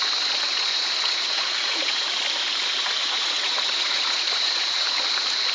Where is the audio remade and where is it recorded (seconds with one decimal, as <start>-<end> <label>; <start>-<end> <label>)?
0.0-0.5 recorded; 0.5-1.9 remade; 1.9-2.8 recorded; 2.8-4.9 remade; 4.9-5.5 recorded